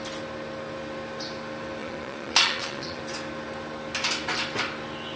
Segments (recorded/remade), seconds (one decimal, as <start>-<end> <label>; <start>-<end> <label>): 0.0-1.8 recorded; 1.8-3.0 remade; 3.0-5.2 recorded